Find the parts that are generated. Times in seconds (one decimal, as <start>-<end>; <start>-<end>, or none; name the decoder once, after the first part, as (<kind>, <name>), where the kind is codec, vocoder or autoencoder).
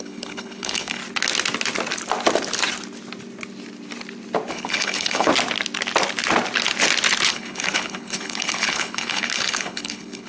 0.0-1.0 (codec, HILCodec); 4.5-5.3; 7.3-10.3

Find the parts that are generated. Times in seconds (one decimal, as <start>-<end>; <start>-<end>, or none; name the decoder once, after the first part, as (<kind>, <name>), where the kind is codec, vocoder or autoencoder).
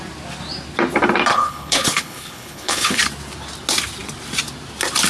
1.3-3.0 (codec, HILCodec)